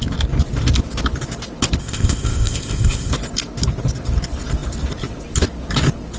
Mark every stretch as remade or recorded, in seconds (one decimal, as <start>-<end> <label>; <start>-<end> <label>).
0.0-1.8 recorded; 1.8-3.1 remade; 3.1-6.2 recorded